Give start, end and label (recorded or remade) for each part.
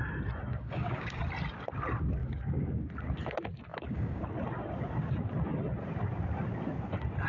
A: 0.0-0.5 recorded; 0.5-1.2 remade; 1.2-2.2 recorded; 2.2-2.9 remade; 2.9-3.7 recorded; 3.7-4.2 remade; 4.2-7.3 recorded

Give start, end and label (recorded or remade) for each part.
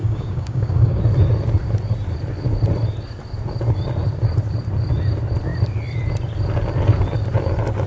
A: 0.0-1.0 remade; 1.0-7.9 recorded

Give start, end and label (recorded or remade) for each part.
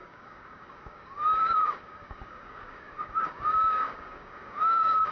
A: 0.0-5.1 remade